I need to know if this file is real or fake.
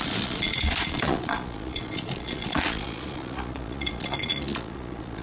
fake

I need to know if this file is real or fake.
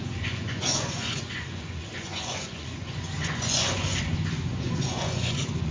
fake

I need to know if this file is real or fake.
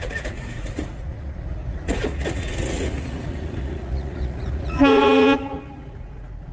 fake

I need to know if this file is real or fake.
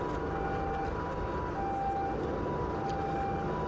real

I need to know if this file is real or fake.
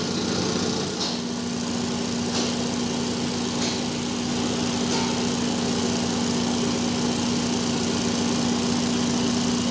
real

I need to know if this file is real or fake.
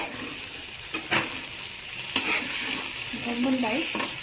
real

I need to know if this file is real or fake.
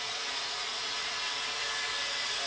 fake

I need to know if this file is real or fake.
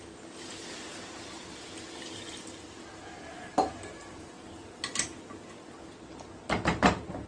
real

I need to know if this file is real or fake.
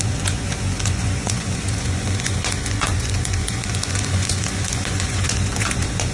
fake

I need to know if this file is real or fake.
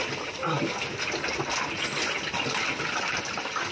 real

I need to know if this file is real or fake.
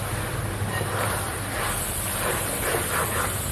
real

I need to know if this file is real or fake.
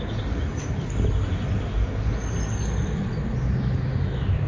real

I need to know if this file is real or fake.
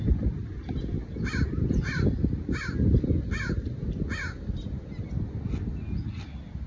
real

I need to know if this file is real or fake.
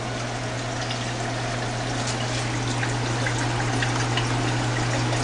real